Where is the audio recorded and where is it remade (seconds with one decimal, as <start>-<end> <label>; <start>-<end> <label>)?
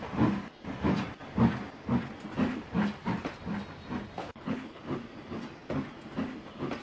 0.0-4.2 recorded; 4.2-4.8 remade; 4.8-6.8 recorded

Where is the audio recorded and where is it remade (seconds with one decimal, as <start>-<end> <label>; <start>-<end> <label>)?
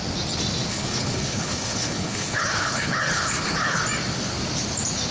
0.0-0.7 recorded; 0.7-3.8 remade; 3.8-5.1 recorded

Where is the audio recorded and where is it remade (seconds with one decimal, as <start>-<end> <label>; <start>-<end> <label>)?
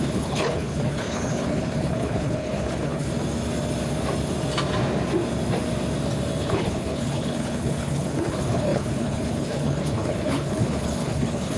0.0-3.1 remade; 3.1-6.4 recorded; 6.4-11.6 remade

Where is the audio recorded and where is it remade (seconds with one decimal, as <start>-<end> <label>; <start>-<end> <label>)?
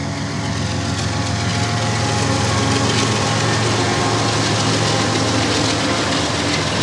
0.0-6.8 recorded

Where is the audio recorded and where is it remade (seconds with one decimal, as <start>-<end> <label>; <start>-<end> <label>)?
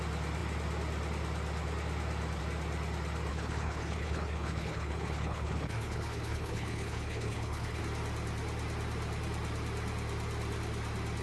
0.0-3.3 recorded; 3.3-7.8 remade; 7.8-11.2 recorded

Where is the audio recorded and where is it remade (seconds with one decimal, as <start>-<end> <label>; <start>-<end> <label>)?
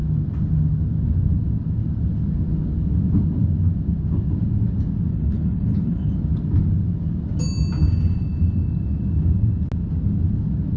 0.0-5.1 recorded; 5.1-6.1 remade; 6.1-10.8 recorded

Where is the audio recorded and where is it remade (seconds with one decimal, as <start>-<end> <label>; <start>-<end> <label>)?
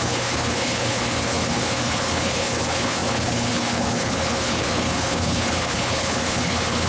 0.0-6.9 remade